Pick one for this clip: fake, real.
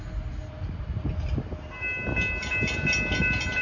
real